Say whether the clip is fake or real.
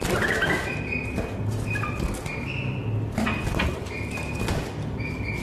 real